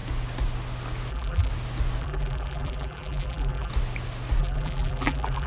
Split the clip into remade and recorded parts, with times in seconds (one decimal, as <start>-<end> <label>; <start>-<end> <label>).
0.0-1.1 recorded; 1.1-1.5 remade; 1.5-2.0 recorded; 2.0-3.7 remade; 3.7-4.4 recorded; 4.4-5.5 remade

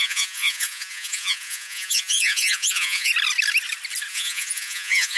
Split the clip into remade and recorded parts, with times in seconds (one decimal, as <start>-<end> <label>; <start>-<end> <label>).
0.0-3.1 remade; 3.1-4.1 recorded; 4.1-5.2 remade